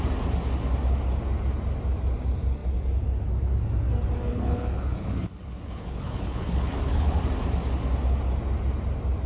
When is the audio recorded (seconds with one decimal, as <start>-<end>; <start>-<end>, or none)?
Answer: 0.0-4.3; 7.2-9.3